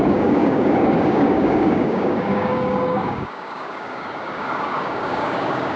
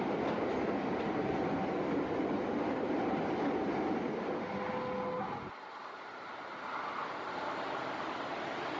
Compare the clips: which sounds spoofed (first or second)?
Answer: first